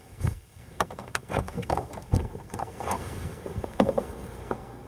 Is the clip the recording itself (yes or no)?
no